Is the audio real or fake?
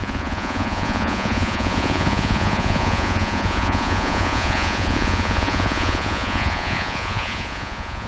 fake